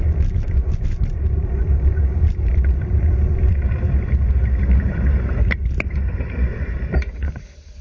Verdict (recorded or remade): remade